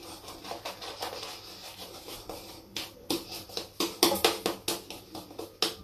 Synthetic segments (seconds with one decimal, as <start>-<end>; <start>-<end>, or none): 0.0-3.5